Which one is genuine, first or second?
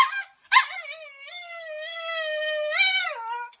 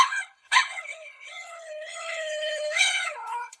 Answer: first